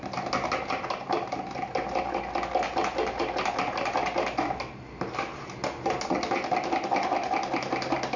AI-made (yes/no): no